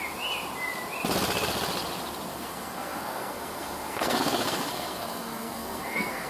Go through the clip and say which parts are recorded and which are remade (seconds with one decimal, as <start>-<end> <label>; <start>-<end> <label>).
0.0-2.3 recorded; 2.3-6.3 remade